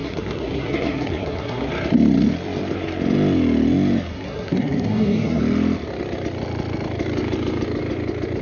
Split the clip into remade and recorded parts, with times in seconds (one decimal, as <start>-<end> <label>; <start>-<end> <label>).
0.0-1.7 remade; 1.7-4.1 recorded; 4.1-5.4 remade; 5.4-8.4 recorded